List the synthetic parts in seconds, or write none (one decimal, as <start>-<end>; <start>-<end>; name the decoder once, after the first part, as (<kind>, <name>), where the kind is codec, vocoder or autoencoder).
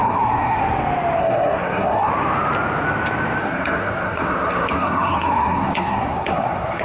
0.0-0.6 (codec, SNAC); 1.2-2.1; 3.4-6.8